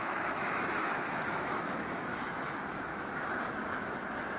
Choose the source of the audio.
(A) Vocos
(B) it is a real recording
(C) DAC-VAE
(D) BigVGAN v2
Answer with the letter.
C